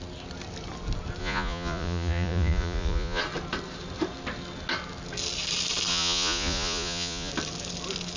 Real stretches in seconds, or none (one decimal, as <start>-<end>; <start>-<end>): 0.0-1.2; 3.2-5.9; 7.3-8.2